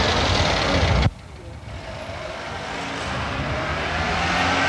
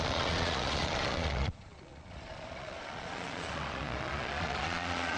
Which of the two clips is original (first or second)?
first